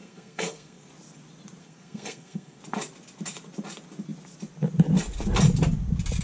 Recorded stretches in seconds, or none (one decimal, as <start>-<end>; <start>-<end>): 0.9-1.6; 2.6-6.2